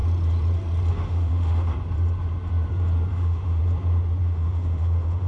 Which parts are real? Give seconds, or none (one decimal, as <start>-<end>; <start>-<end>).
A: 0.0-0.9; 1.7-3.1; 3.6-4.2